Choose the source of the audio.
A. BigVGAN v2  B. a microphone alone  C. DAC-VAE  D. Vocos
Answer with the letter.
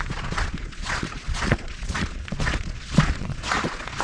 D